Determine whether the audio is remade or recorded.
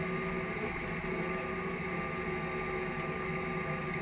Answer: recorded